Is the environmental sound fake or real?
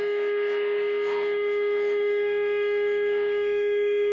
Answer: fake